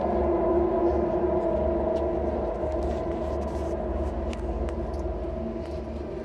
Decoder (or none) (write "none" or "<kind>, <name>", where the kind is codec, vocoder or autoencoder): none